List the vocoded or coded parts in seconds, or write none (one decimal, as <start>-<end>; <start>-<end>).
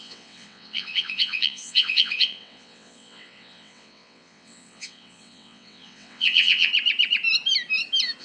0.0-6.7